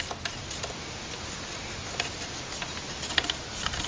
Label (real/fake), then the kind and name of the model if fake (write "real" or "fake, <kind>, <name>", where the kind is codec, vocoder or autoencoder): real